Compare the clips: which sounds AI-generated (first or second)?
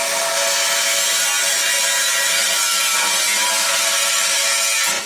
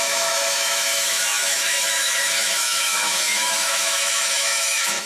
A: second